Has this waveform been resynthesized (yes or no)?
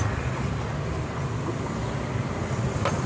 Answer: no